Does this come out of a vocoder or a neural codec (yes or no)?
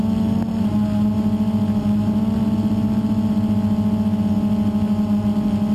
no